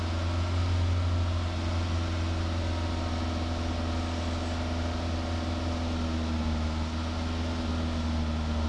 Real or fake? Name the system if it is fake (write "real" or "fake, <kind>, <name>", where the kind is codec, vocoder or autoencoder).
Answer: real